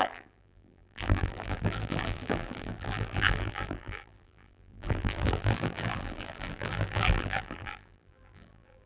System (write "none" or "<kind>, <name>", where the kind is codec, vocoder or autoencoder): vocoder, BigVGAN v2